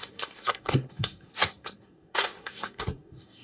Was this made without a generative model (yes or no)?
no